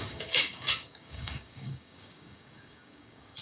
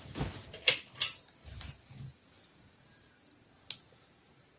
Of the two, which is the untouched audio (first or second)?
second